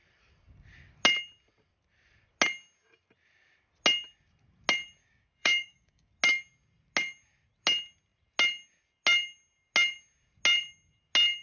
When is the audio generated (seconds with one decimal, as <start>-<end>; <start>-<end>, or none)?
5.0-6.1